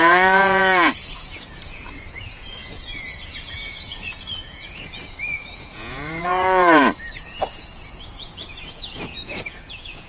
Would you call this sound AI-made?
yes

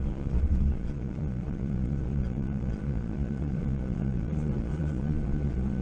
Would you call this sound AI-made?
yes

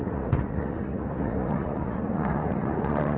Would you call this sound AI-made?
yes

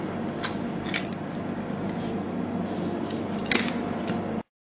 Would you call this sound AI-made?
no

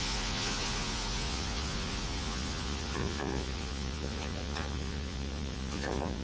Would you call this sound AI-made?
yes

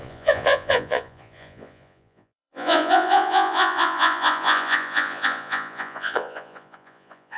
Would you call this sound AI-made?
yes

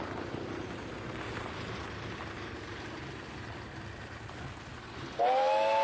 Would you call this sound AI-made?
no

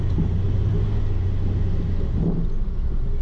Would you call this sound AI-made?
no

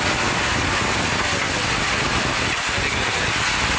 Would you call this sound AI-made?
no